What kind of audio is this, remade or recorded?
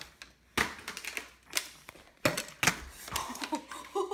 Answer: recorded